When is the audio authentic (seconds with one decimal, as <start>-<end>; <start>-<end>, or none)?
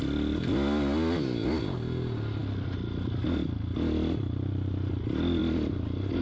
0.0-6.2